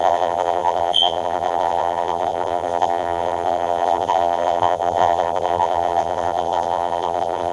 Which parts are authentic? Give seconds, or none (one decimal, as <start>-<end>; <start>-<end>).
none